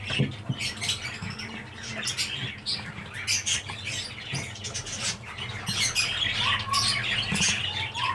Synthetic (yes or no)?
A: no